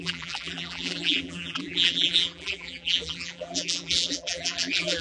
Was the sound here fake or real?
fake